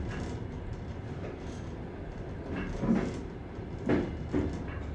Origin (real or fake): fake